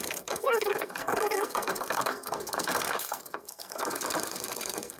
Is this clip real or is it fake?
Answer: fake